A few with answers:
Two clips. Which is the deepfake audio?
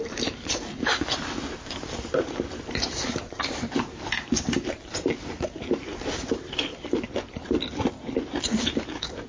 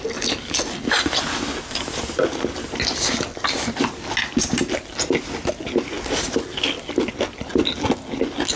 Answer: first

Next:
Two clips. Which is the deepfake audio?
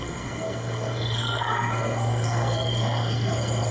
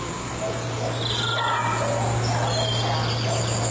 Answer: first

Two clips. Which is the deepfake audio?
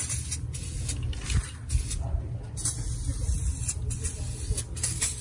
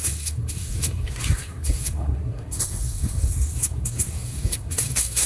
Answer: second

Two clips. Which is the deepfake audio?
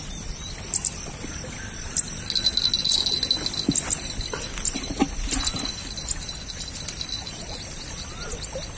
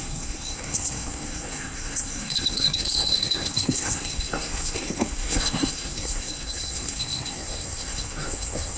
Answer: second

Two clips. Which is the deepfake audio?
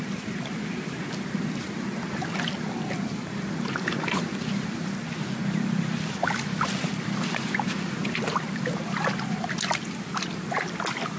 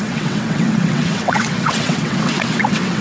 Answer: second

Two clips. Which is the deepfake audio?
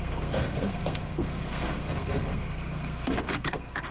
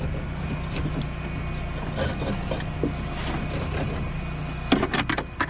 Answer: first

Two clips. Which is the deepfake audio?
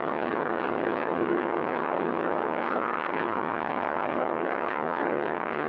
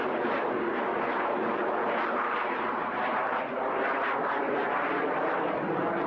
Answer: first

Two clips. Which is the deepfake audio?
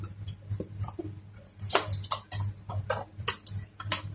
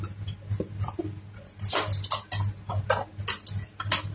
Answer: first